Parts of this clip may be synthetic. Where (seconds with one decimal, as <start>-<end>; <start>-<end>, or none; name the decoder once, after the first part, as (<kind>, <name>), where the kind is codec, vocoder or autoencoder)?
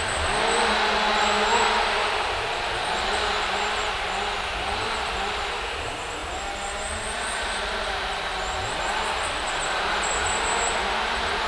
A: none